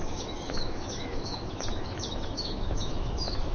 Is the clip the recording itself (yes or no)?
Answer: no